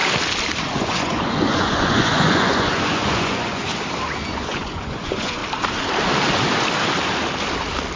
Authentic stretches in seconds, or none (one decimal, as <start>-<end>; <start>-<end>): 0.0-0.6; 3.7-4.3; 5.4-8.0

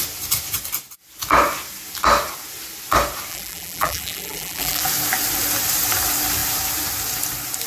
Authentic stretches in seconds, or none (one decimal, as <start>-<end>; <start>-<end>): 0.0-3.3; 4.8-7.7

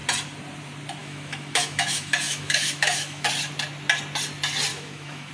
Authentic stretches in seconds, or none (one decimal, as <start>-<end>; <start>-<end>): 0.0-1.0; 3.3-4.7

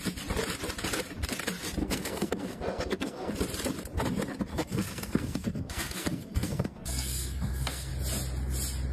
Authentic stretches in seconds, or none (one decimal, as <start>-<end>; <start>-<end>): 0.0-1.8; 3.3-4.5; 7.9-8.9